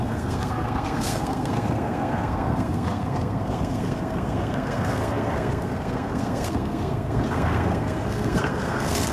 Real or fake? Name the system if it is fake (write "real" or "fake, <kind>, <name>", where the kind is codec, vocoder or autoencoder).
fake, codec, SNAC